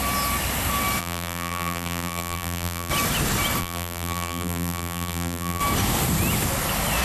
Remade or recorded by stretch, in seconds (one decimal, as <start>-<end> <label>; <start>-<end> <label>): 0.0-1.0 recorded; 1.0-2.9 remade; 2.9-3.6 recorded; 3.6-5.6 remade; 5.6-7.0 recorded